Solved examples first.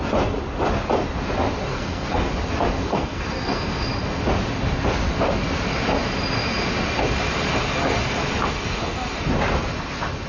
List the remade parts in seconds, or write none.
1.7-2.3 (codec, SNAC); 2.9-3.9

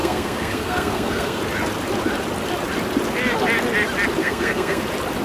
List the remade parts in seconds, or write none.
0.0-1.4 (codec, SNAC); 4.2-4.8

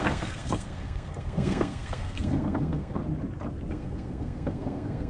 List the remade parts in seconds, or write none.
0.0-3.0 (codec, SNAC); 3.7-5.1